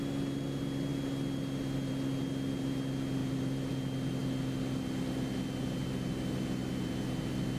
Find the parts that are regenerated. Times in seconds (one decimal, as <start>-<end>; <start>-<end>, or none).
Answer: 3.2-3.7